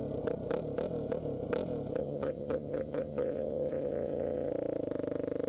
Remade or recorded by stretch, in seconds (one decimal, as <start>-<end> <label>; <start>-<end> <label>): 0.0-2.0 recorded; 2.0-4.5 remade; 4.5-5.5 recorded